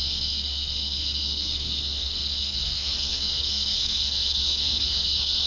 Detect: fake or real fake